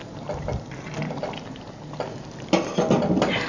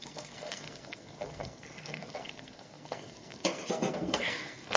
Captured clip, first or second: first